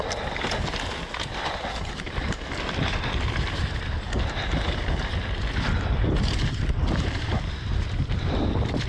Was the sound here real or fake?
real